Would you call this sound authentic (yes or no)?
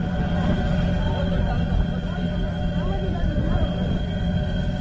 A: yes